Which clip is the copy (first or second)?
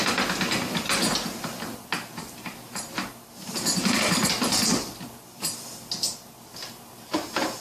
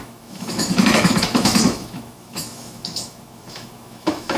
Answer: second